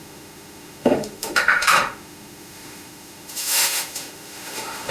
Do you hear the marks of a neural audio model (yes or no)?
yes